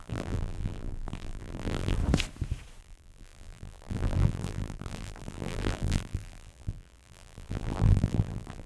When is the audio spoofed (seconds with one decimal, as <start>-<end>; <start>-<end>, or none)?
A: 0.0-2.0; 2.8-8.7